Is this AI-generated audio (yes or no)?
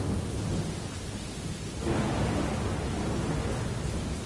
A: no